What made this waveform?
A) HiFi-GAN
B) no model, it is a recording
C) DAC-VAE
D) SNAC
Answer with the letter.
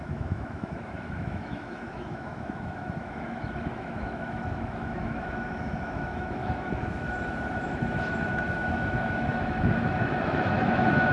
C